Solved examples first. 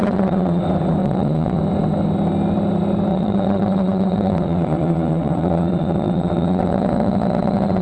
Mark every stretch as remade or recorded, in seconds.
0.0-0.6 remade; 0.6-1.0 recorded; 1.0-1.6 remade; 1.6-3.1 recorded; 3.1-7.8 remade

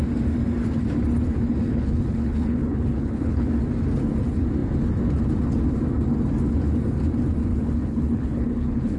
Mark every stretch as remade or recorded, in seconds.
0.0-1.6 recorded; 1.6-3.6 remade; 3.6-7.5 recorded; 7.5-9.0 remade